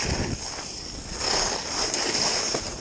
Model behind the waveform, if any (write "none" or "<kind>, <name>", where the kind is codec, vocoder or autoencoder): none